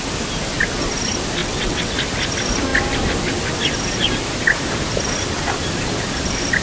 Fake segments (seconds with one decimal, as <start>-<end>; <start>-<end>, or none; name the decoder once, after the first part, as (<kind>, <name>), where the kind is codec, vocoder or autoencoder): 1.4-1.9 (vocoder, WaveNeXt)